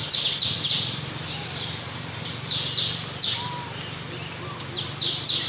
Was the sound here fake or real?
real